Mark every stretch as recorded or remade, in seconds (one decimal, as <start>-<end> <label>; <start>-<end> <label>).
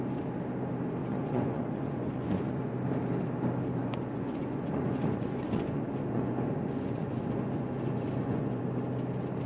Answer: 0.0-1.0 recorded; 1.0-2.7 remade; 2.7-3.8 recorded; 3.8-8.6 remade; 8.6-9.5 recorded